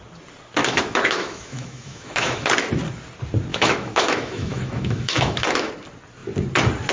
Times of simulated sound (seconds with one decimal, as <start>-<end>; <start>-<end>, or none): 0.6-2.5; 3.5-5.7